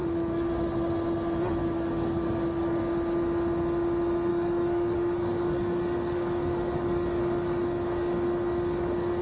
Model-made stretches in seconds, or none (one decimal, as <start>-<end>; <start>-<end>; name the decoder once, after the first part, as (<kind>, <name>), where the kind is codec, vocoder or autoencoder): 0.0-0.5 (codec, DAC); 1.6-2.8; 4.3-9.2